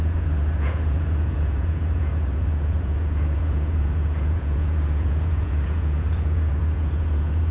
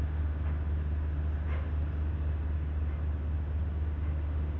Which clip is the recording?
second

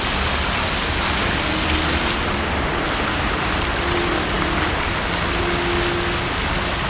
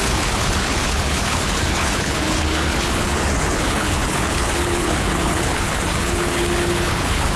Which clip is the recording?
first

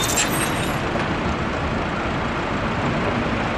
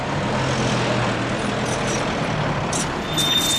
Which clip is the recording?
second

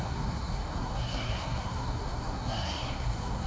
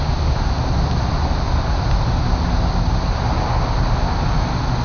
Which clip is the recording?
second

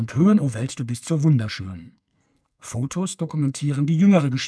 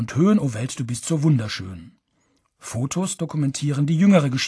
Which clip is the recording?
second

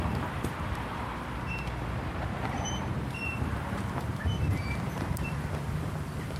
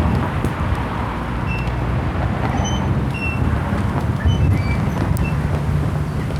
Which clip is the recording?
second